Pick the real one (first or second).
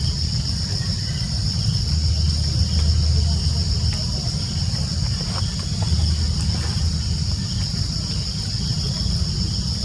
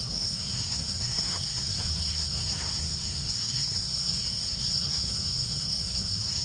first